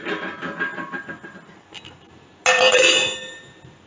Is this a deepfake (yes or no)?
no